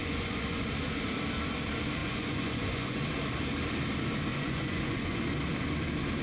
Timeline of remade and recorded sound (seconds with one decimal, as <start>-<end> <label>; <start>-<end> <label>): 0.0-0.6 remade; 0.6-2.0 recorded; 2.0-3.0 remade; 3.0-4.3 recorded; 4.3-5.2 remade; 5.2-6.2 recorded